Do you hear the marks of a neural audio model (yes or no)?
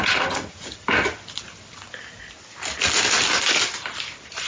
no